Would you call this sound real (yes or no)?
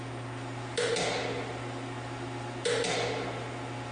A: yes